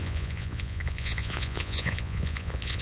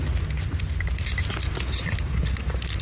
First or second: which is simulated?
first